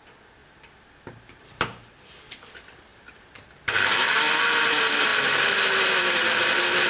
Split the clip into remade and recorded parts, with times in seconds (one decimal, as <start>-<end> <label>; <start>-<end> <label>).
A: 0.0-0.4 recorded; 0.4-2.5 remade; 2.5-2.9 recorded; 2.9-3.9 remade; 3.9-5.1 recorded; 5.1-6.4 remade; 6.4-6.9 recorded